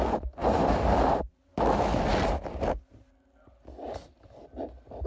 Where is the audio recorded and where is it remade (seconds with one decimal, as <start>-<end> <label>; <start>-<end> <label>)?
0.0-0.4 recorded; 0.4-1.7 remade; 1.7-2.1 recorded; 2.1-2.8 remade; 2.8-5.1 recorded